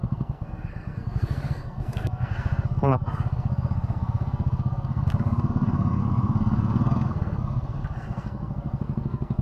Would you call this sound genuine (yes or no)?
no